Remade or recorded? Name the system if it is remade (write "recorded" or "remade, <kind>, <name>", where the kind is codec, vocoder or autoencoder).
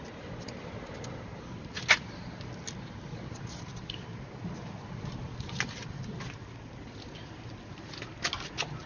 recorded